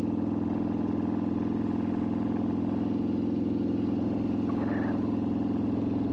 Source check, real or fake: real